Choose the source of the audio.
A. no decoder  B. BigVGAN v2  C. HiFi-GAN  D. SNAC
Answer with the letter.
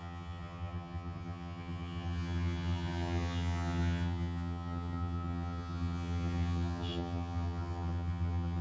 C